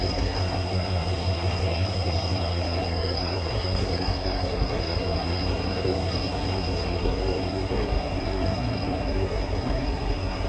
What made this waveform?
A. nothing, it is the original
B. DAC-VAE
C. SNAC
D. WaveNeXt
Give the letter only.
C